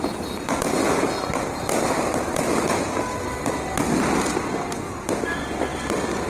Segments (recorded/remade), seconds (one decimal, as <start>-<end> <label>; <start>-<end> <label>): 0.0-6.3 recorded